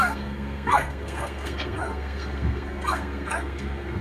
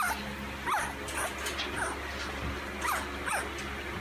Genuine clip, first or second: second